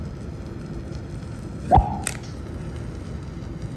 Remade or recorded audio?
recorded